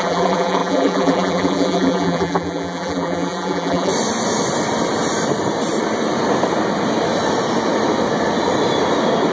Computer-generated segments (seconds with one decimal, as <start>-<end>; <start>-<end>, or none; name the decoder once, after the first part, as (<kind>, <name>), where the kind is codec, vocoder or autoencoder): 0.0-3.9 (vocoder, BigVGAN v2)